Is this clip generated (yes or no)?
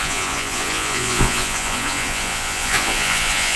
yes